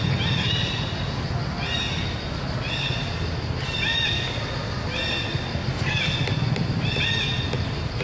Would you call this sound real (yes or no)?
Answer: yes